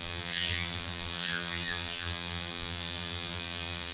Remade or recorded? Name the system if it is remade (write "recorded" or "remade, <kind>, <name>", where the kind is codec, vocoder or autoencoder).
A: remade, vocoder, BigVGAN v2